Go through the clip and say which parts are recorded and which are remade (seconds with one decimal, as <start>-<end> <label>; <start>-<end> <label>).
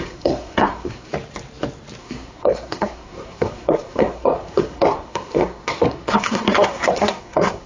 0.0-1.1 remade; 1.1-2.0 recorded; 2.0-7.7 remade